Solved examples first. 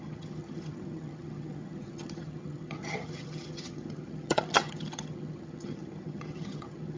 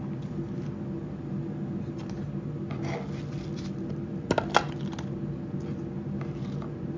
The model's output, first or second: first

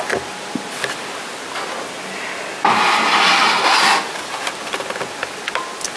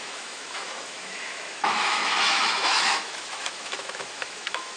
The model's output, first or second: second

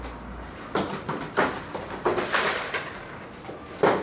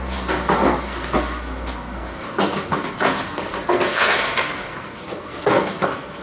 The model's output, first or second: second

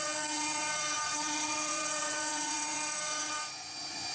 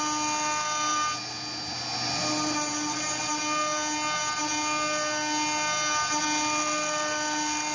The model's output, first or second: first